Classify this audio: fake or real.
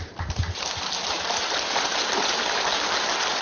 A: real